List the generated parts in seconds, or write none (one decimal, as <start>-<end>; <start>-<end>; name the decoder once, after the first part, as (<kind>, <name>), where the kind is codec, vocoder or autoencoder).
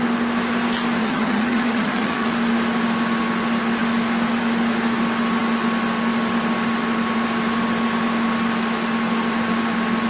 1.0-2.3 (vocoder, HiFi-GAN)